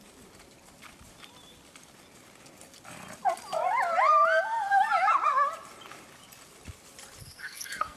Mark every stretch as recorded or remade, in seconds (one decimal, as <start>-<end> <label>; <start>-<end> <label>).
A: 0.0-7.2 recorded; 7.2-8.0 remade